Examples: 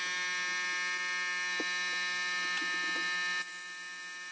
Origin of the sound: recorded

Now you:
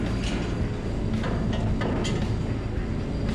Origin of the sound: recorded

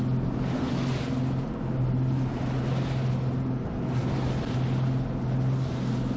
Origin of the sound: recorded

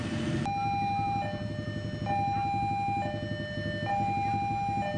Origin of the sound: recorded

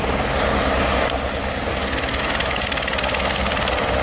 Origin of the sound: recorded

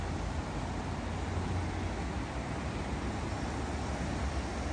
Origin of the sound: recorded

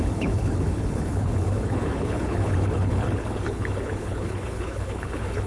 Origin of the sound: remade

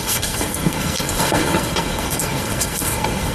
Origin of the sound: remade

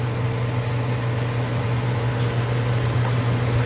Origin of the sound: recorded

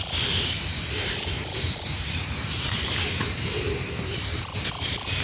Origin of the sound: remade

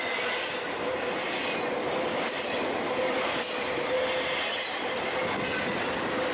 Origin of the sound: recorded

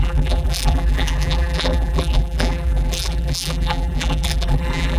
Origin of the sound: remade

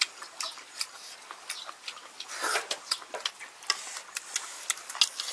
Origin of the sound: recorded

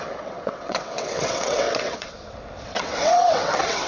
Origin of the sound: remade